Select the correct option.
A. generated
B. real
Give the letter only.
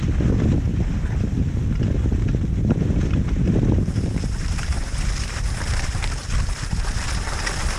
B